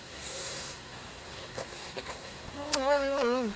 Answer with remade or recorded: remade